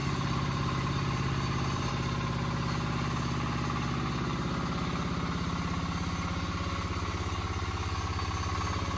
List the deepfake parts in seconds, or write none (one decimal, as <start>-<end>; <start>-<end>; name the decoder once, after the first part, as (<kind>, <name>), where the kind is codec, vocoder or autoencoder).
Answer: 0.0-1.9 (vocoder, BigVGAN v2)